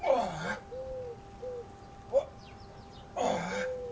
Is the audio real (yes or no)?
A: yes